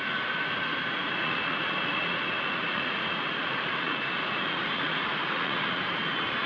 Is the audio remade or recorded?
remade